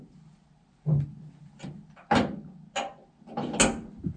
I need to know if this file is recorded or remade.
recorded